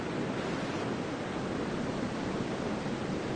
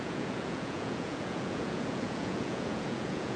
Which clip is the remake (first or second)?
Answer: second